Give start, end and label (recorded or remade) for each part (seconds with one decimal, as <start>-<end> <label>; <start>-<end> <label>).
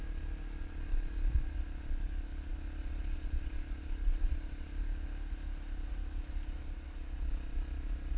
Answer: 0.0-8.2 recorded